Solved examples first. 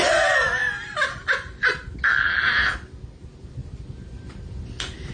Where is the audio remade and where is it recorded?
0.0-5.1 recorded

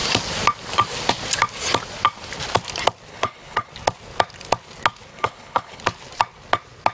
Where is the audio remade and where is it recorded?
0.0-3.1 recorded; 3.1-3.7 remade; 3.7-5.1 recorded; 5.1-5.8 remade; 5.8-6.9 recorded

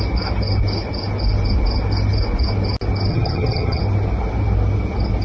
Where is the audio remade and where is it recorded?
0.0-3.1 recorded; 3.1-3.8 remade; 3.8-5.2 recorded

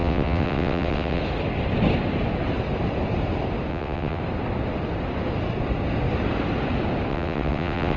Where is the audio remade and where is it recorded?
0.0-1.2 remade; 1.2-3.7 recorded; 3.7-4.2 remade; 4.2-7.1 recorded; 7.1-8.0 remade